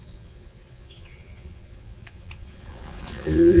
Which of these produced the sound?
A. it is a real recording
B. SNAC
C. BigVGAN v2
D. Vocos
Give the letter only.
D